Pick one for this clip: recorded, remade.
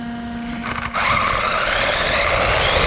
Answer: recorded